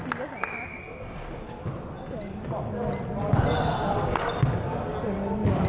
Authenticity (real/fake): real